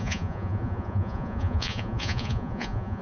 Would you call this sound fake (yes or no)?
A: yes